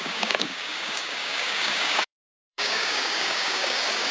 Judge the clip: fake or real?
fake